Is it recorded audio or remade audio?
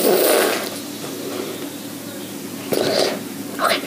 recorded